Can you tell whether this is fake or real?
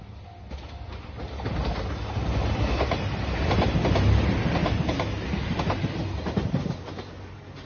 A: real